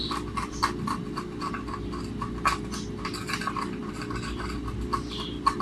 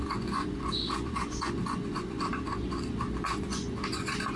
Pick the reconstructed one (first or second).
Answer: second